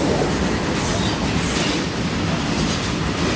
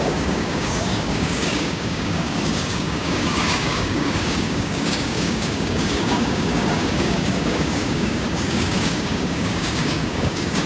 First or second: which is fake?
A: second